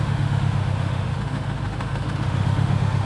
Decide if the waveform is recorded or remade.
remade